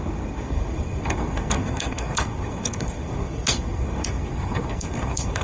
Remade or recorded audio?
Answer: remade